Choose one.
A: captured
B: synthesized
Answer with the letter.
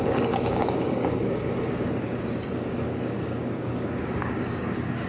B